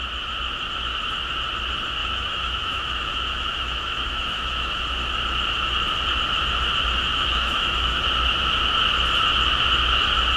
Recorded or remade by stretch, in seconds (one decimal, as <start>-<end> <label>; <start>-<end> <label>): 0.0-2.0 recorded; 2.0-4.8 remade; 4.8-7.1 recorded; 7.1-8.0 remade; 8.0-10.4 recorded